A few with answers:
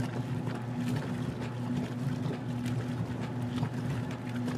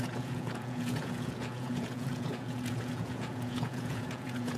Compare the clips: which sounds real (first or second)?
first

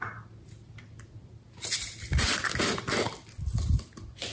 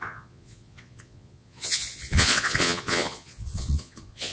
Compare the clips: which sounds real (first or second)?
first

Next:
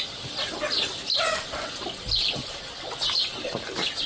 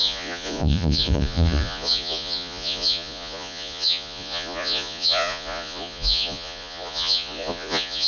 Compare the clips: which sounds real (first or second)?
first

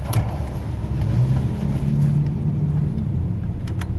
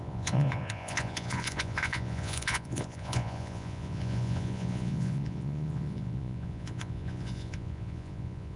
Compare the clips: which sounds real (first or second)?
first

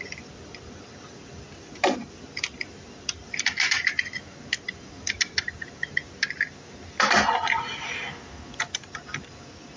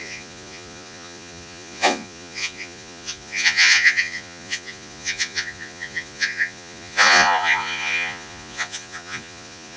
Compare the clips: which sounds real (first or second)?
first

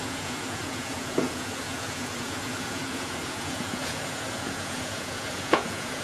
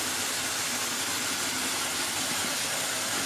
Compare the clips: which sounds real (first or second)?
second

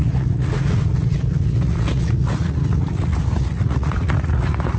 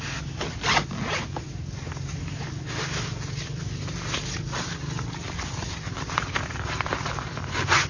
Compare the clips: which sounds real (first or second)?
second